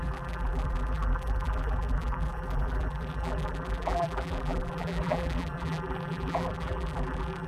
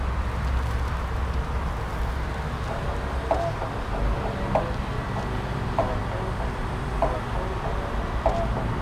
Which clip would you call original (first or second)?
second